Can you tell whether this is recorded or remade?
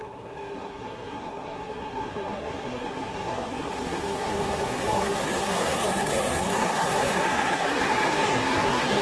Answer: remade